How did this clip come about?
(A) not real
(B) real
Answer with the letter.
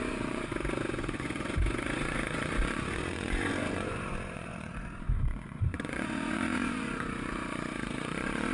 A